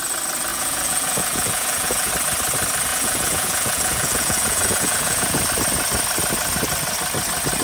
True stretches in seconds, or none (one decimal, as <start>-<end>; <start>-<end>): 0.0-0.5; 2.1-2.9; 5.4-7.6